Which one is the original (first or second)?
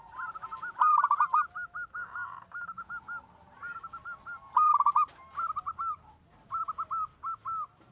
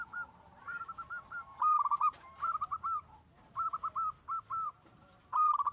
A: first